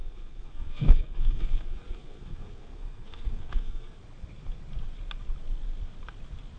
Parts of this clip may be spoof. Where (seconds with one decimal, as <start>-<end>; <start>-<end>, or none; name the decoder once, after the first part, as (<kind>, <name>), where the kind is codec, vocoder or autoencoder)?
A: 0.0-4.0 (codec, SNAC)